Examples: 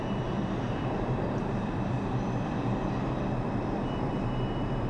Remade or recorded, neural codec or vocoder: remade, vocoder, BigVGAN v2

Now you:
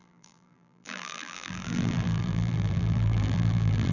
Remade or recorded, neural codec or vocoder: remade, vocoder, BigVGAN v2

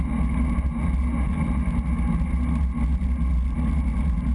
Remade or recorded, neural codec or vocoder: recorded